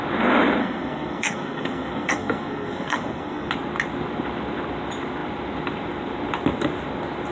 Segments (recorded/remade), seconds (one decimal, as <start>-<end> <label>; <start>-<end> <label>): 0.0-0.6 recorded; 0.6-3.5 remade; 3.5-7.3 recorded